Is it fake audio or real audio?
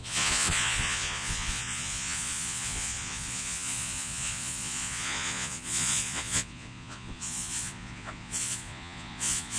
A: fake